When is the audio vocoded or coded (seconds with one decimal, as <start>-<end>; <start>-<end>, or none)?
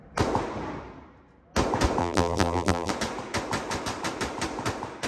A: 2.0-2.9